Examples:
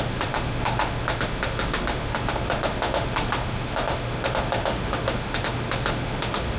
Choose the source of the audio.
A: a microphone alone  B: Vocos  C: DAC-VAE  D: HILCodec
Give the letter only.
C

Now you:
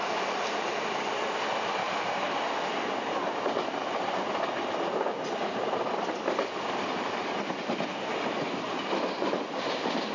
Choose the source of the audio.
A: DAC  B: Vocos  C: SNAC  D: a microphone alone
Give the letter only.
D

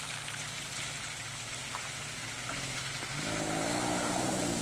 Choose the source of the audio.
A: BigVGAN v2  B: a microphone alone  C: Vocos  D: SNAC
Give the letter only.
B